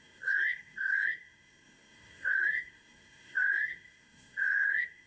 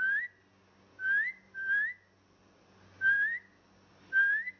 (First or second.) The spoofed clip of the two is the first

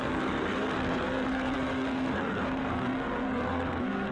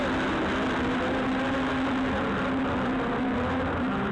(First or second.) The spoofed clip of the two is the first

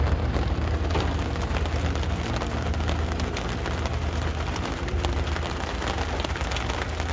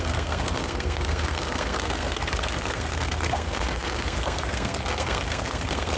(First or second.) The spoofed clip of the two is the second